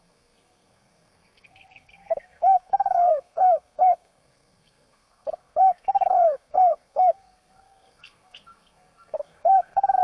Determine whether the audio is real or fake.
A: fake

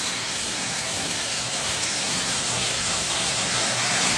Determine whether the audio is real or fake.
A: fake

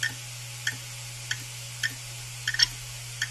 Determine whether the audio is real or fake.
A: real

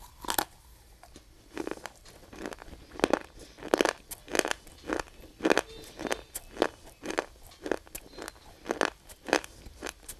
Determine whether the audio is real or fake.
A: real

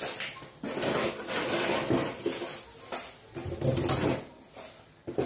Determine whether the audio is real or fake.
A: real